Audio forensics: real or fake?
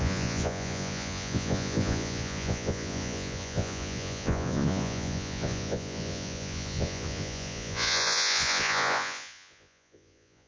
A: fake